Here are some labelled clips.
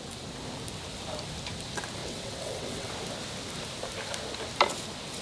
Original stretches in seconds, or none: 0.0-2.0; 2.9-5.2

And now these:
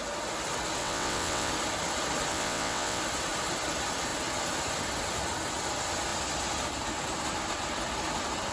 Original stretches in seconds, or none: 0.0-0.8; 1.5-2.3; 3.0-8.5

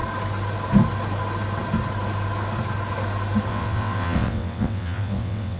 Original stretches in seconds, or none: 0.0-3.5